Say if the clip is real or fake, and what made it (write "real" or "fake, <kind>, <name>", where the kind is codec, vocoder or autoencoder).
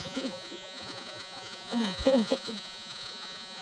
fake, vocoder, Vocos